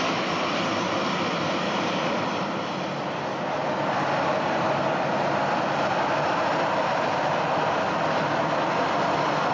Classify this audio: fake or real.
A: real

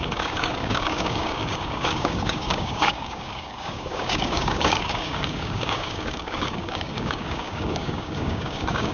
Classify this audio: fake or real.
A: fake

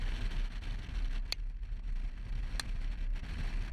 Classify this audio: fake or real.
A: real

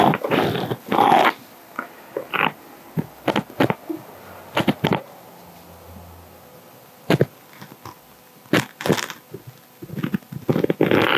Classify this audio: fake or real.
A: real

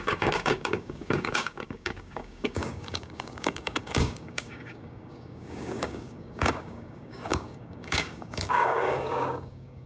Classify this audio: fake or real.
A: fake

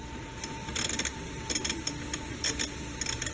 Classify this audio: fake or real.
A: real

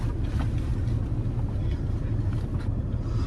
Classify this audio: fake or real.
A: real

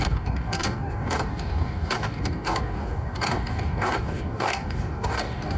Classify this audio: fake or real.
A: fake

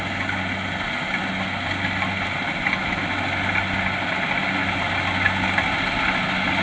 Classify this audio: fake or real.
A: real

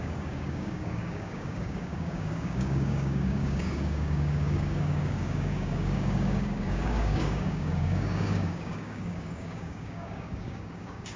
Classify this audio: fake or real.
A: fake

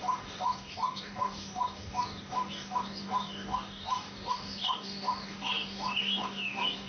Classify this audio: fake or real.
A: fake